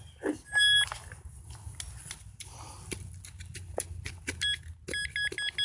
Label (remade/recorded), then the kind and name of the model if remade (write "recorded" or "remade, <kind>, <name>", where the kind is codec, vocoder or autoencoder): recorded